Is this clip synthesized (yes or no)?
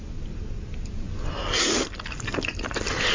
no